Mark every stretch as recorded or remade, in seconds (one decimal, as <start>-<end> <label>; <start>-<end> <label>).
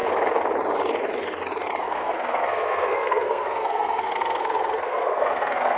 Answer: 0.0-1.8 recorded; 1.8-5.8 remade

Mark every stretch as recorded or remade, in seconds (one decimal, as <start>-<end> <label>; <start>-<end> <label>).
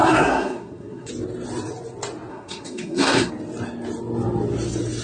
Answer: 0.0-1.1 remade; 1.1-2.3 recorded; 2.3-3.3 remade; 3.3-5.0 recorded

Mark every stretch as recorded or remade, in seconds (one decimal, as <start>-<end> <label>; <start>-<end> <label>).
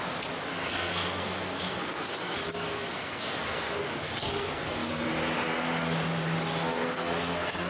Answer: 0.0-0.5 recorded; 0.5-5.1 remade; 5.1-6.8 recorded; 6.8-7.7 remade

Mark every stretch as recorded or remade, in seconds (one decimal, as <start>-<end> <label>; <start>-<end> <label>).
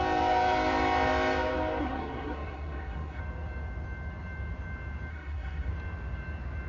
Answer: 0.0-1.8 recorded; 1.8-3.2 remade; 3.2-5.1 recorded; 5.1-5.7 remade; 5.7-6.7 recorded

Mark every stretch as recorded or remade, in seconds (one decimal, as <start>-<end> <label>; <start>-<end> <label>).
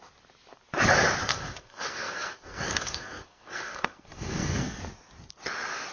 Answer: 0.0-1.3 recorded; 1.3-4.8 remade; 4.8-5.9 recorded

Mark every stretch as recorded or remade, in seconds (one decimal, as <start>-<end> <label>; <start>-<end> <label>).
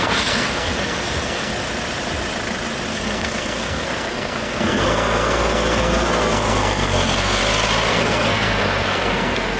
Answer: 0.0-1.5 remade; 1.5-2.9 recorded; 2.9-7.4 remade; 7.4-7.9 recorded; 7.9-9.6 remade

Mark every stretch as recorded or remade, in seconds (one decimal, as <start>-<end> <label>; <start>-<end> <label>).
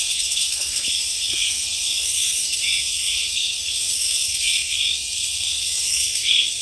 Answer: 0.0-6.6 remade